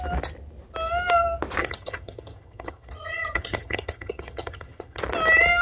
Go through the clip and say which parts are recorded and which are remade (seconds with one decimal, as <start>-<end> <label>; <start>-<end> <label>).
0.0-1.6 recorded; 1.6-5.0 remade; 5.0-5.6 recorded